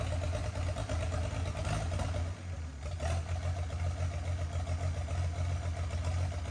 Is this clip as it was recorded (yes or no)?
yes